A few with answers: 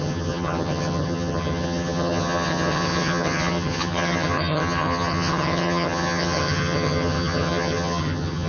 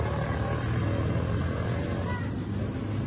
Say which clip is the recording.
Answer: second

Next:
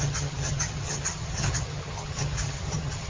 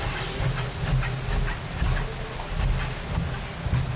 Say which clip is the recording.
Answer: second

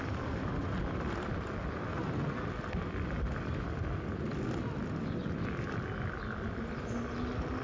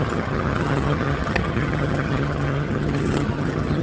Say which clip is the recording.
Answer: first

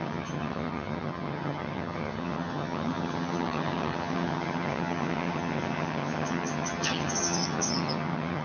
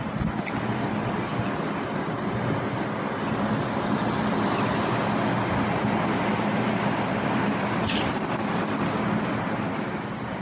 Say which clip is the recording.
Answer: second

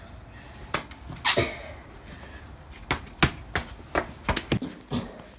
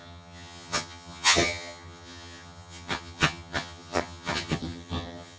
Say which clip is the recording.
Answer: first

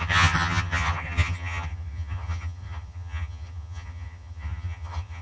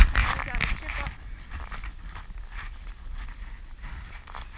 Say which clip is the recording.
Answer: second